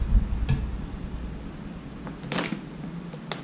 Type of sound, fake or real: real